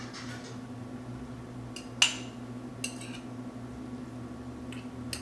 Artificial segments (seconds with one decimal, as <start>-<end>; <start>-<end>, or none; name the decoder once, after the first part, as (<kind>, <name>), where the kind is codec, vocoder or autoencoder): none